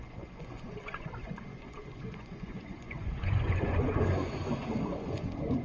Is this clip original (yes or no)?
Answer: no